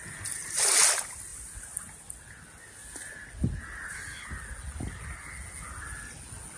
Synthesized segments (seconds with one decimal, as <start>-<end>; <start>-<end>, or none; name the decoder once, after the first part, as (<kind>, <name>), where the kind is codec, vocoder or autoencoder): none